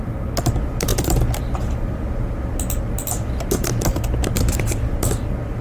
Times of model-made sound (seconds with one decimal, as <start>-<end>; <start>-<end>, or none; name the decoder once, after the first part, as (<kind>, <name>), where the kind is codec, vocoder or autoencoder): none